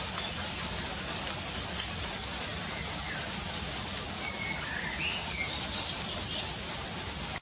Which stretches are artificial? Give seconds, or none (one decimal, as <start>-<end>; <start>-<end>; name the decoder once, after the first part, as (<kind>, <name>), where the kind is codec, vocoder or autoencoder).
none